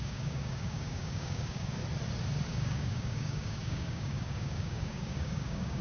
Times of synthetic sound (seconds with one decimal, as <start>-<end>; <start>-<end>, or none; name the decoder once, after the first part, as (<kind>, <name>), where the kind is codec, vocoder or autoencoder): 0.0-1.8 (codec, DAC); 2.5-5.8